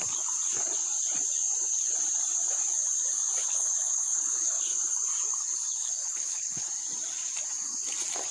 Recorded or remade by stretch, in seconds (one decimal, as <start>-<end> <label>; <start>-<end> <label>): 0.0-3.4 recorded; 3.4-4.8 remade; 4.8-5.8 recorded; 5.8-6.7 remade; 6.7-8.3 recorded